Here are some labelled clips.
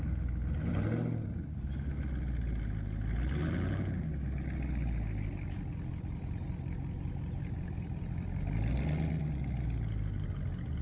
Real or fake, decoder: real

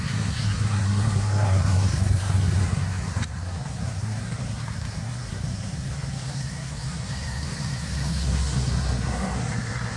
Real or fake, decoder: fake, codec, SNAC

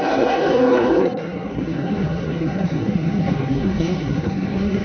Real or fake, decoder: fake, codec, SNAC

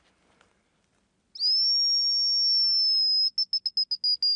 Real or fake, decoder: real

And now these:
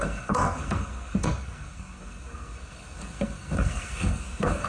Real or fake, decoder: fake, codec, SNAC